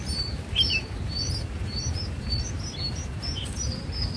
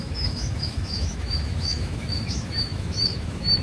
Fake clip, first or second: second